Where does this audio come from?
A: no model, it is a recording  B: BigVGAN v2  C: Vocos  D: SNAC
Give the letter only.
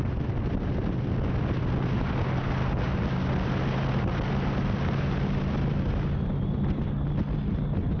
A